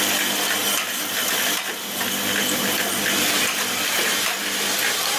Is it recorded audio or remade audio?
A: recorded